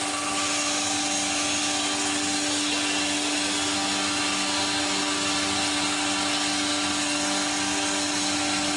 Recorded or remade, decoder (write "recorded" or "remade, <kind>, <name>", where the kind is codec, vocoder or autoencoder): recorded